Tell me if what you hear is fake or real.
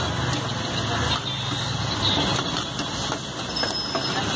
real